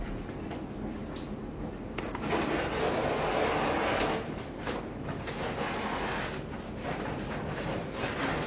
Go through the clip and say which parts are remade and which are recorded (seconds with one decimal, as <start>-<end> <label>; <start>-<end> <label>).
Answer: 0.0-8.5 recorded